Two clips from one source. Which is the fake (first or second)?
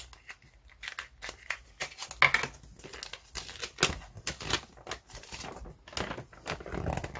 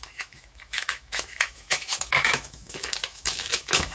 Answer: second